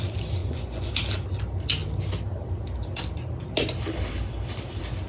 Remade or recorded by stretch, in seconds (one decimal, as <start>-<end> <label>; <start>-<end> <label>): 0.0-0.4 recorded; 0.4-0.9 remade; 0.9-5.1 recorded

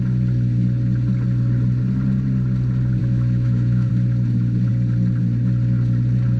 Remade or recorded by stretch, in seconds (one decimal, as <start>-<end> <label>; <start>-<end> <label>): 0.0-3.0 recorded; 3.0-3.9 remade; 3.9-6.4 recorded